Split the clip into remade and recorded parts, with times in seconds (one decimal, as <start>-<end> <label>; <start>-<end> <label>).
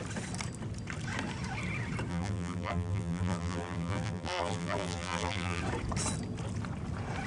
0.0-2.1 recorded; 2.1-5.6 remade; 5.6-7.3 recorded